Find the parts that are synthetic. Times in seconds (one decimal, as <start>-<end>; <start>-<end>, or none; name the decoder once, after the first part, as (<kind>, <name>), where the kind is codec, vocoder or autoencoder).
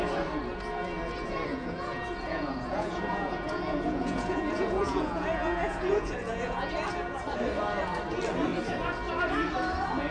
1.5-6.7 (vocoder, Vocos)